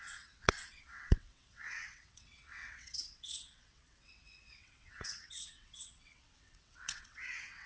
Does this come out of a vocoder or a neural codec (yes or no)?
yes